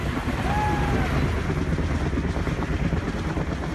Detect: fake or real real